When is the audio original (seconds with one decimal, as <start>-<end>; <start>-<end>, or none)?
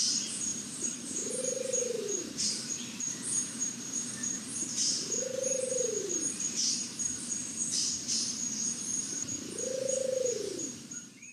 none